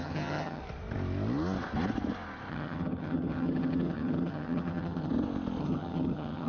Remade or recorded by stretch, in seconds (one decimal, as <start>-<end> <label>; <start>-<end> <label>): 0.0-0.6 remade; 0.6-2.5 recorded; 2.5-5.1 remade; 5.1-5.6 recorded; 5.6-6.5 remade

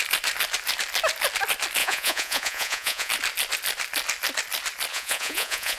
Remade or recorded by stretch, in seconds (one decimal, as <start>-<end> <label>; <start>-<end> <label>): 0.0-1.8 recorded; 1.8-3.1 remade; 3.1-4.9 recorded; 4.9-5.8 remade

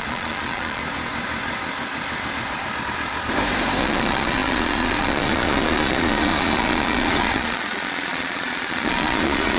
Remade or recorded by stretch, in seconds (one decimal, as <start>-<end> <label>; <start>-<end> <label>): 0.0-0.8 remade; 0.8-3.8 recorded; 3.8-9.6 remade

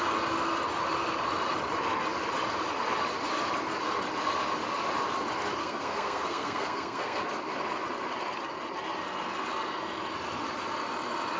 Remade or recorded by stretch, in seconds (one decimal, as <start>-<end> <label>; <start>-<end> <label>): 0.0-5.6 recorded; 5.6-7.2 remade; 7.2-11.4 recorded

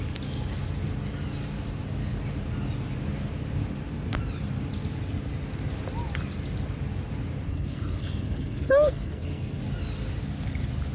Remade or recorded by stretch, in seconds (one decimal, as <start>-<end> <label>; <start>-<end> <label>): 0.0-7.5 recorded; 7.5-9.6 remade; 9.6-10.9 recorded

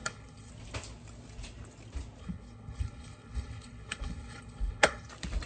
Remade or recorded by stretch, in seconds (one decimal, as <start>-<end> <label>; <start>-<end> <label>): 0.0-0.5 remade; 0.5-2.2 recorded; 2.2-5.1 remade; 5.1-5.5 recorded

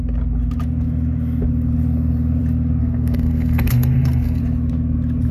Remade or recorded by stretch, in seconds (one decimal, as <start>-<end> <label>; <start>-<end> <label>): 0.0-2.8 recorded; 2.8-4.4 remade; 4.4-5.3 recorded